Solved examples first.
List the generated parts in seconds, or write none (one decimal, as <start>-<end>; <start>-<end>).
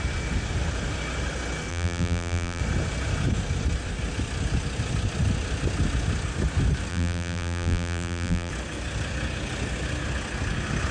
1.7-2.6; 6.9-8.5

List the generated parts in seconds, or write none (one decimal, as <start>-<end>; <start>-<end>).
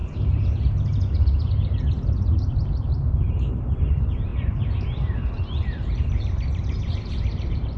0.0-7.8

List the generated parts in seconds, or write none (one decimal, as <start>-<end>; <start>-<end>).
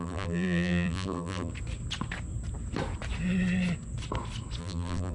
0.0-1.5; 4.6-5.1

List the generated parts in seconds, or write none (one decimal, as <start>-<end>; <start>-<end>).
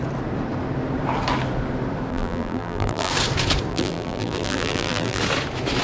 2.1-3.1; 3.7-5.2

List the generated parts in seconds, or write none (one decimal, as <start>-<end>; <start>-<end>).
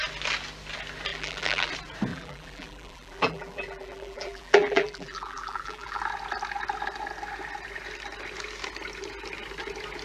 1.1-1.7; 2.1-6.0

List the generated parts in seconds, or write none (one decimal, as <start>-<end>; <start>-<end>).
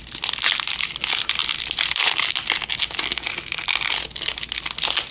none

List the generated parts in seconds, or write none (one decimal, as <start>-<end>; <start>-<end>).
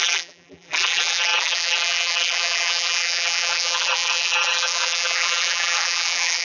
0.0-6.4